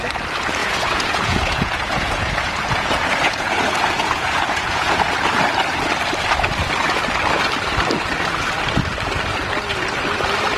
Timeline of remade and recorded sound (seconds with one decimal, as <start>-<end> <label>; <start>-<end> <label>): 0.0-0.6 recorded; 0.6-5.4 remade; 5.4-10.6 recorded